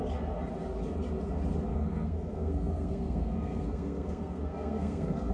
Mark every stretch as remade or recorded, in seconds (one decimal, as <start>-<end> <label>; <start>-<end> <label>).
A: 0.0-1.7 recorded; 1.7-5.3 remade